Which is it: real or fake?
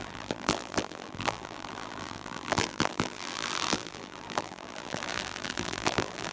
fake